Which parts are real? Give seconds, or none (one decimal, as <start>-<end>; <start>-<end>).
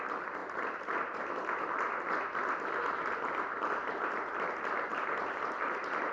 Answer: 0.0-0.4; 1.2-6.1